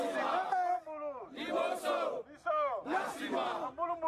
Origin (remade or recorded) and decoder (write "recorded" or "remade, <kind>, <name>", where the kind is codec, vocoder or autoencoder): recorded